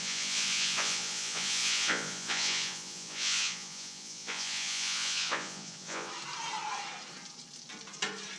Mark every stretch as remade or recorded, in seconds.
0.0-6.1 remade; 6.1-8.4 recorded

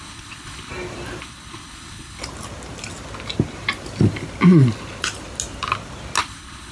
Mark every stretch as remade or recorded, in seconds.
0.0-0.7 remade; 0.7-1.2 recorded; 1.2-2.2 remade; 2.2-6.2 recorded; 6.2-6.7 remade

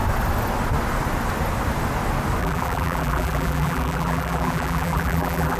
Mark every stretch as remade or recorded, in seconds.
0.0-2.4 recorded; 2.4-5.6 remade

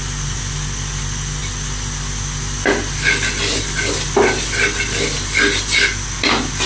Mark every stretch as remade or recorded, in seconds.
0.0-6.7 recorded